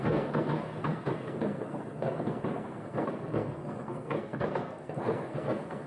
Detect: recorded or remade remade